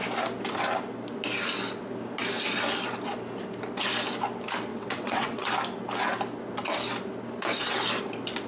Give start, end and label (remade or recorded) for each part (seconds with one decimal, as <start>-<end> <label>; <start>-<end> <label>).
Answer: 0.0-4.7 recorded; 4.7-5.5 remade; 5.5-8.5 recorded